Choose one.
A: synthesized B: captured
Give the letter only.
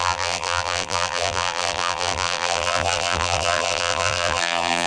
A